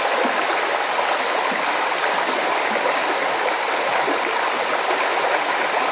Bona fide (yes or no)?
yes